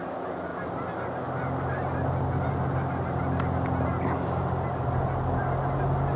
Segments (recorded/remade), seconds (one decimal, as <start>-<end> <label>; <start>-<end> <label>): 0.0-6.2 recorded